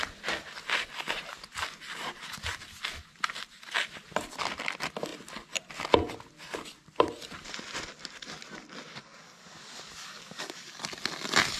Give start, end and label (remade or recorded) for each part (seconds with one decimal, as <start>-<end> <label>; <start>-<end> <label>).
0.0-8.9 recorded; 8.9-10.8 remade; 10.8-11.6 recorded

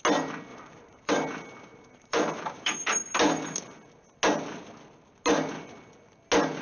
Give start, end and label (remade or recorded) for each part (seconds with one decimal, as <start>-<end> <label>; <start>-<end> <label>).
0.0-0.5 recorded; 0.5-1.1 remade; 1.1-1.7 recorded; 1.7-2.9 remade; 2.9-6.6 recorded

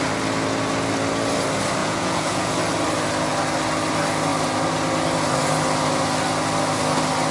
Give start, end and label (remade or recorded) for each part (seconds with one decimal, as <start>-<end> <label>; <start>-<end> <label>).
0.0-1.8 recorded; 1.8-2.5 remade; 2.5-7.3 recorded